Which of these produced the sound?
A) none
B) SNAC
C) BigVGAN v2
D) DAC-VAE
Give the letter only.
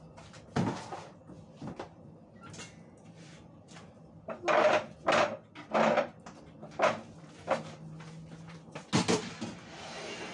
A